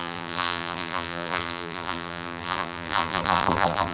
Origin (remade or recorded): remade